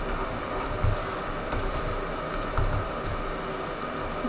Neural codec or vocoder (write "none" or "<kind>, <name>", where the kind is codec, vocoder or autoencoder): none